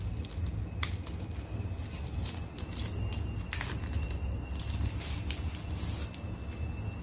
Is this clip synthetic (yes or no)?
no